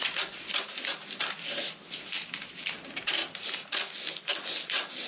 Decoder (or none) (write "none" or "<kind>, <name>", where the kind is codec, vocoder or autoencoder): none